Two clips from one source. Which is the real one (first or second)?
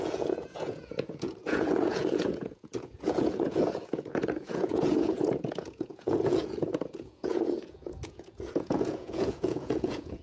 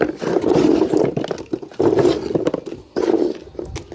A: second